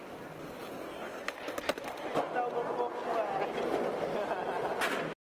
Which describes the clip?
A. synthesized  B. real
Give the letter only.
B